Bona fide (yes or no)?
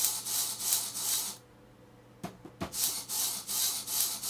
yes